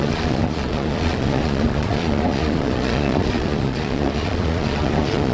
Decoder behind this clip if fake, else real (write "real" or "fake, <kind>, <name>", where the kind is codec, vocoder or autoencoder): fake, vocoder, Vocos